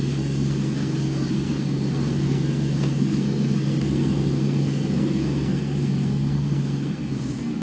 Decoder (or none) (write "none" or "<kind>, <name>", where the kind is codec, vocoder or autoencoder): codec, SNAC